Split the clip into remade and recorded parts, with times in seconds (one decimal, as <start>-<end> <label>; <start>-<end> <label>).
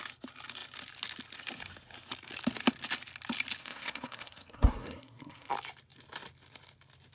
0.0-3.6 recorded; 3.6-5.5 remade; 5.5-7.1 recorded